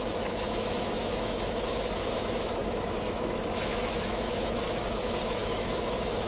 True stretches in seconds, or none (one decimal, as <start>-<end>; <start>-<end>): none